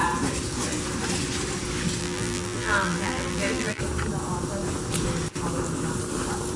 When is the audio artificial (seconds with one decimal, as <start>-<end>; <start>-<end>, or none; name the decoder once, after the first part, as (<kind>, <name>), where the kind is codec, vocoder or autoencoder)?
2.0-3.8 (vocoder, BigVGAN v2)